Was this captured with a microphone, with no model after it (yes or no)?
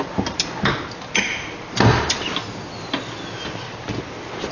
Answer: yes